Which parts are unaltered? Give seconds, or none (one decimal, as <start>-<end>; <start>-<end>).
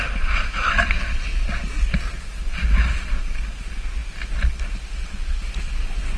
0.0-6.2